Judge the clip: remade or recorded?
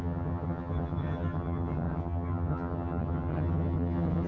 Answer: remade